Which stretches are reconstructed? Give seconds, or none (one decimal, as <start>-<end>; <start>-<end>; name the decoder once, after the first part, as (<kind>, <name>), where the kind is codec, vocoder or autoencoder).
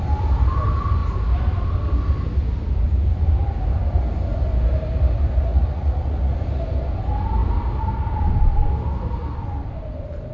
5.5-6.6 (vocoder, Vocos)